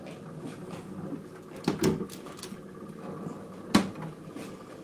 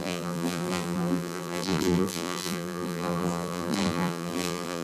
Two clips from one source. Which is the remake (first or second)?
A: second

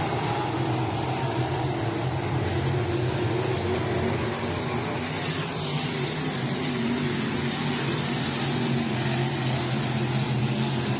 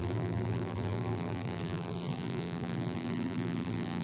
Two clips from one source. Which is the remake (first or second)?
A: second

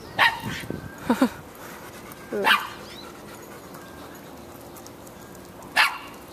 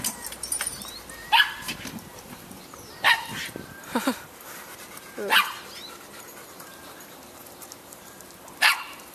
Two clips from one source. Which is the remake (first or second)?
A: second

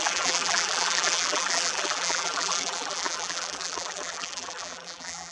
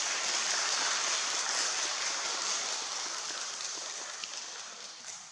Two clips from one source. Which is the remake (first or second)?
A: first